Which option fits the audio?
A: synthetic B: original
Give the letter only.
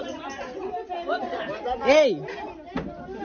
B